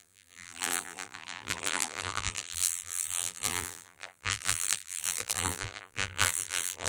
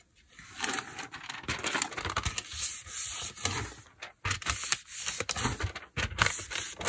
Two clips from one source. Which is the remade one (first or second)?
first